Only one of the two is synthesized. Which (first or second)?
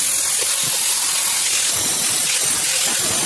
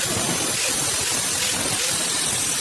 second